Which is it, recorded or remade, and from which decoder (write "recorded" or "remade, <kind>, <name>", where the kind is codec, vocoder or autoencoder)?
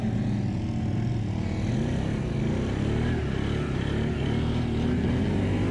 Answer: recorded